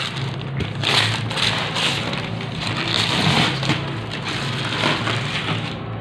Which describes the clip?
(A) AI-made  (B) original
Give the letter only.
B